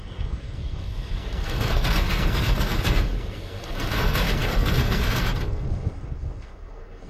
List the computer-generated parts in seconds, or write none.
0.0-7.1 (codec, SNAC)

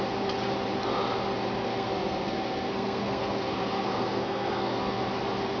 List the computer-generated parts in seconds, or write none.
1.6-5.0 (codec, SNAC)

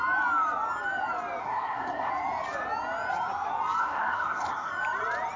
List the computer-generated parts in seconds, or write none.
1.4-2.1 (codec, SNAC); 3.8-4.7

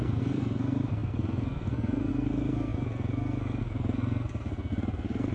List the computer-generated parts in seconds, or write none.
0.0-5.3 (codec, SNAC)

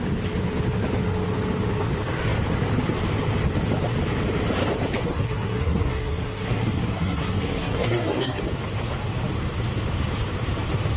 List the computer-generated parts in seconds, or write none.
5.1-8.4 (codec, SNAC)

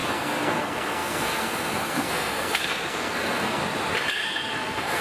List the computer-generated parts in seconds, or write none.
0.0-3.6 (codec, SNAC); 4.1-5.0